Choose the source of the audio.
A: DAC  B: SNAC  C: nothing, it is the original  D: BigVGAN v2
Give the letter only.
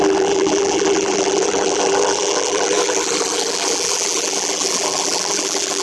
D